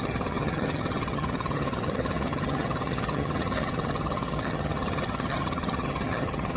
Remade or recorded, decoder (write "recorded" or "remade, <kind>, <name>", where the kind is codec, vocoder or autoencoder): remade, vocoder, HiFi-GAN